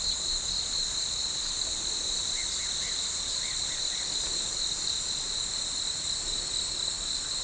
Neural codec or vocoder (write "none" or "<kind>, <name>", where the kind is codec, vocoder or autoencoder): none